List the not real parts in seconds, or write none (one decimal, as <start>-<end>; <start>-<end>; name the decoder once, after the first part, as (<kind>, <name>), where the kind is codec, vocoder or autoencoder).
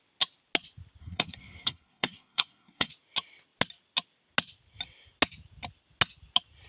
1.0-2.9 (codec, SNAC)